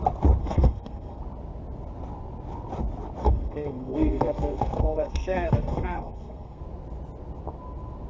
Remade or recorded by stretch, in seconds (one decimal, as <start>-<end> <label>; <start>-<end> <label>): 0.0-0.4 recorded; 0.4-1.2 remade; 1.2-3.2 recorded; 3.2-6.6 remade; 6.6-8.1 recorded